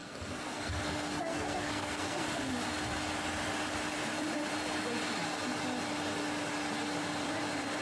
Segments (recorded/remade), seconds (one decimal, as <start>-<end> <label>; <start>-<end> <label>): 0.0-2.5 remade; 2.5-7.8 recorded